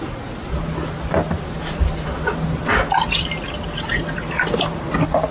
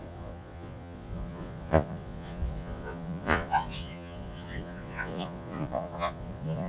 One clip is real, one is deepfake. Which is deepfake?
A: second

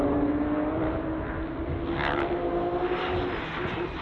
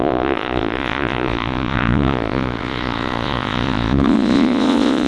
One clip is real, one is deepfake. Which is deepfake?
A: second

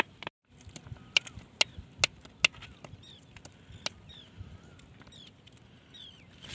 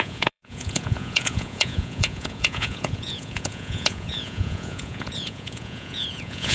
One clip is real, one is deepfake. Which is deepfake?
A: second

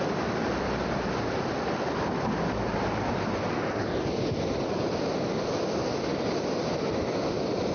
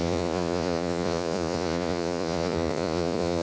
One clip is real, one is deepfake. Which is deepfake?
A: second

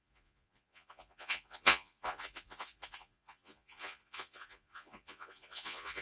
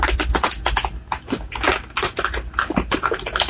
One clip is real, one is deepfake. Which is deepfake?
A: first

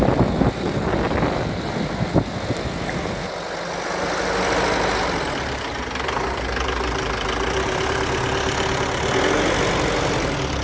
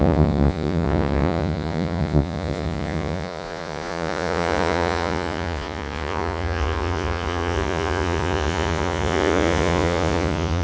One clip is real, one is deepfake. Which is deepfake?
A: second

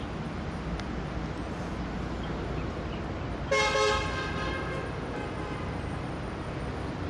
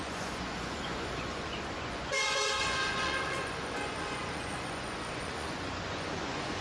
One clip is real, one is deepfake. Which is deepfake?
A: second